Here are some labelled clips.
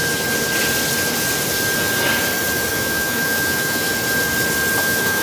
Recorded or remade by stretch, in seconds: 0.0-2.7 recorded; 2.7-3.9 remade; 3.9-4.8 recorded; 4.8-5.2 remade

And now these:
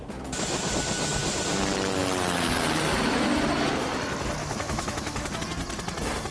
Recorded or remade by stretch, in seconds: 0.0-4.4 recorded; 4.4-5.4 remade; 5.4-6.3 recorded

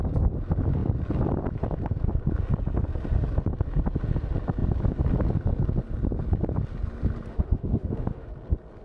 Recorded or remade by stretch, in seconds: 0.0-7.3 recorded; 7.3-8.3 remade; 8.3-8.8 recorded

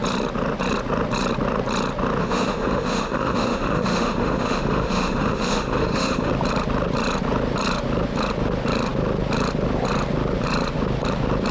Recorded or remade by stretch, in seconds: 0.0-2.2 recorded; 2.2-6.3 remade; 6.3-11.5 recorded

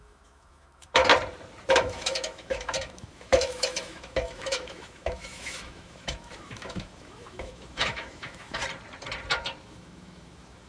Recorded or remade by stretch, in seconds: 0.0-1.0 remade; 1.0-1.7 recorded; 1.7-8.6 remade; 8.6-9.6 recorded; 9.6-10.7 remade